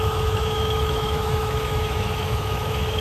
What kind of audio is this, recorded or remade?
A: remade